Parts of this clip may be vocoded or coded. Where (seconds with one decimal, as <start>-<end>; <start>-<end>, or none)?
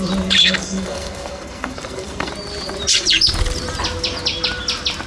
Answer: 0.4-2.3